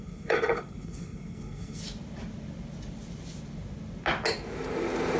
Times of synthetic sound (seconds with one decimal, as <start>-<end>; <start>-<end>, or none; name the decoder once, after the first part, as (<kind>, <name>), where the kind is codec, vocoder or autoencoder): 0.0-1.8 (codec, SNAC)